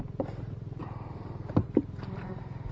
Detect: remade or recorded recorded